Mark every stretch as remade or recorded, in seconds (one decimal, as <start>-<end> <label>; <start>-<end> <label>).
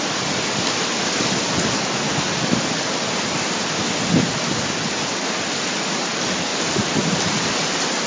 0.0-8.1 recorded